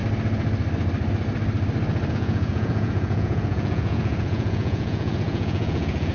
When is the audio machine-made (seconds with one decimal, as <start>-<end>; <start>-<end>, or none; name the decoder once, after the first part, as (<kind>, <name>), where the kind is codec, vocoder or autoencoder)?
2.1-6.1 (vocoder, Vocos)